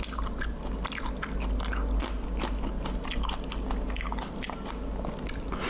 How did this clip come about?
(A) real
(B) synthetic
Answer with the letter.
A